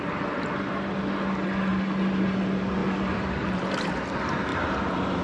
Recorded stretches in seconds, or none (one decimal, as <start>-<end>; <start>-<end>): 0.0-2.8; 3.9-4.5